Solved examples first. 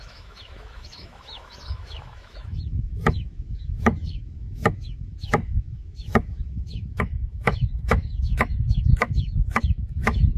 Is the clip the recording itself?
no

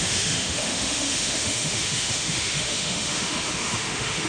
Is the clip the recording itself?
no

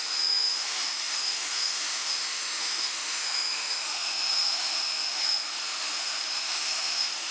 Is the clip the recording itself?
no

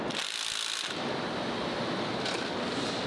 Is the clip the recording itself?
yes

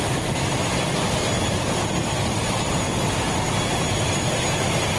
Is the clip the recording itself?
yes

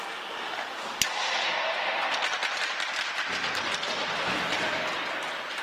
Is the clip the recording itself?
yes